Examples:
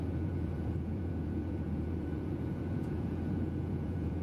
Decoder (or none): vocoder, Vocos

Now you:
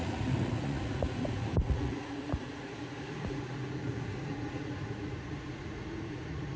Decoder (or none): vocoder, Vocos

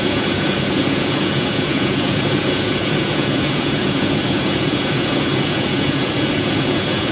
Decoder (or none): vocoder, Vocos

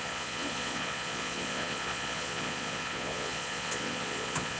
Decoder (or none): vocoder, Vocos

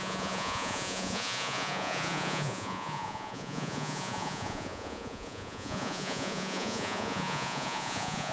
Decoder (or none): vocoder, Vocos